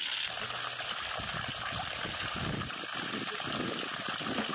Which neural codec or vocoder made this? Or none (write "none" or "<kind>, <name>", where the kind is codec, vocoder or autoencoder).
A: none